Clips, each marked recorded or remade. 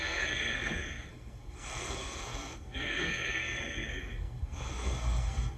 remade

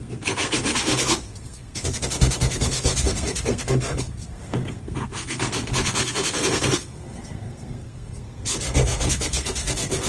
remade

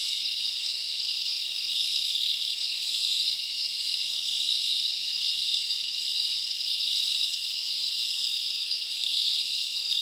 remade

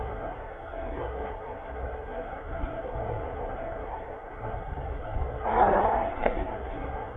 remade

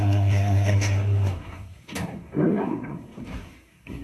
remade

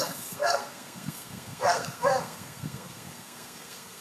remade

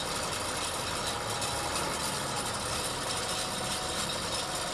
recorded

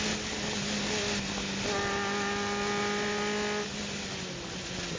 recorded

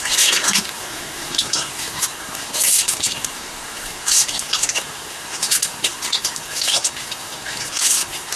remade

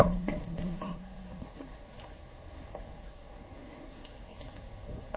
remade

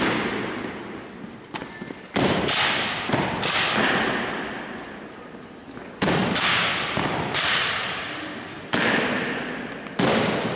recorded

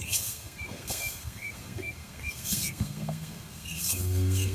remade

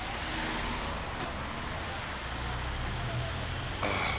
recorded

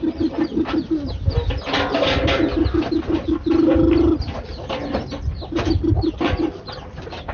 recorded